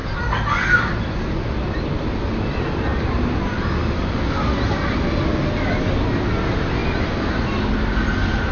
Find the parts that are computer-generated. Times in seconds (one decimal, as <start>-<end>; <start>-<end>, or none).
0.0-1.5